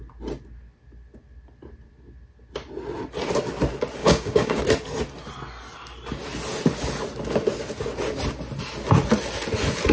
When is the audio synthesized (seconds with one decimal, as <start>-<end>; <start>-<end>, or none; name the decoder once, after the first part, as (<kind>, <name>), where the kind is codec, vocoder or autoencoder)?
4.0-4.6 (codec, DAC)